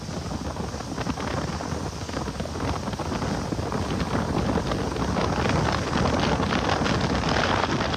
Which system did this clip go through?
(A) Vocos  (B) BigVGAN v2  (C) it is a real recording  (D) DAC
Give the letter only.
C